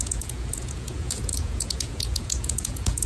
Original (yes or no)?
no